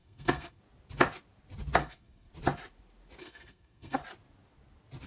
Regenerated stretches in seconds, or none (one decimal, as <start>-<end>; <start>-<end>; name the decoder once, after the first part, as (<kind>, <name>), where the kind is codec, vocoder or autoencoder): 0.0-0.6 (codec, SNAC); 1.8-2.3; 3.2-4.0